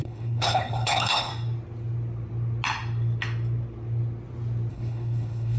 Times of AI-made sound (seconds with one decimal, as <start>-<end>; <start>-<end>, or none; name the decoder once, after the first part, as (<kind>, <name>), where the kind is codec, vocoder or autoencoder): 0.0-1.3 (codec, HILCodec); 4.7-5.6